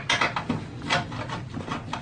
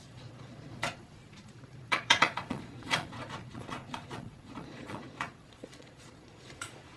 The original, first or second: first